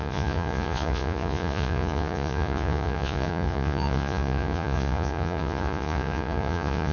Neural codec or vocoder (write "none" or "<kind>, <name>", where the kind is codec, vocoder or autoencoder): vocoder, Vocos